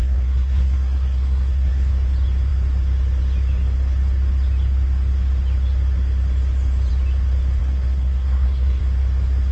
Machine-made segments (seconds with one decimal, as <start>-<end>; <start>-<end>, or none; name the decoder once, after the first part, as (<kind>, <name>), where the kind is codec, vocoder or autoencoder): 0.0-1.9 (codec, SNAC); 7.6-8.8